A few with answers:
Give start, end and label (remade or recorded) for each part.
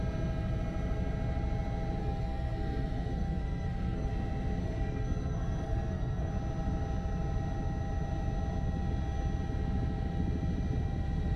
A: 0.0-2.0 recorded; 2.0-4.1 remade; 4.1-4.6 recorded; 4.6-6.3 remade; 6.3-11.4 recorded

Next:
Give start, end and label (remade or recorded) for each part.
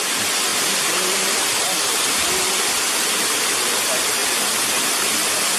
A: 0.0-5.6 recorded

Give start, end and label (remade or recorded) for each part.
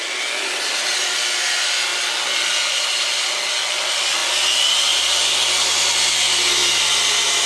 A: 0.0-7.5 recorded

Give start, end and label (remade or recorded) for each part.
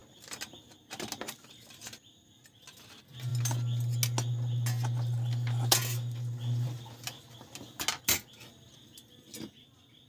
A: 0.0-10.1 recorded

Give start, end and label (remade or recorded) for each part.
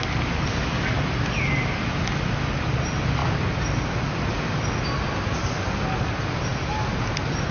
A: 0.0-7.5 recorded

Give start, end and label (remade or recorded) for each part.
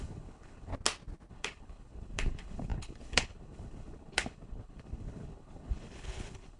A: 0.0-0.7 remade; 0.7-1.3 recorded; 1.3-6.6 remade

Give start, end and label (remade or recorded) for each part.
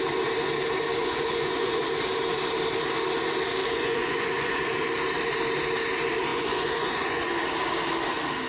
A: 0.0-1.0 recorded; 1.0-1.8 remade; 1.8-3.6 recorded; 3.6-4.6 remade; 4.6-6.3 recorded; 6.3-7.4 remade; 7.4-8.5 recorded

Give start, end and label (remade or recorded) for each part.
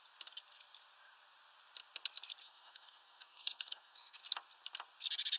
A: 0.0-2.4 recorded; 2.4-4.2 remade; 4.2-5.4 recorded